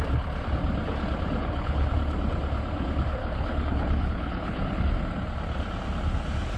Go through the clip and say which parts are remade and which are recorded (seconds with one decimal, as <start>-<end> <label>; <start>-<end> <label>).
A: 0.0-1.4 recorded; 1.4-1.9 remade; 1.9-3.2 recorded; 3.2-4.9 remade; 4.9-6.6 recorded